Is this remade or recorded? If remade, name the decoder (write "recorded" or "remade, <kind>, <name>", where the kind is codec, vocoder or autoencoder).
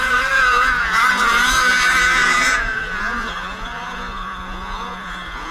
remade, vocoder, Vocos